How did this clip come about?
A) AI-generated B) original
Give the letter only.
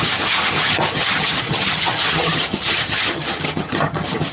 A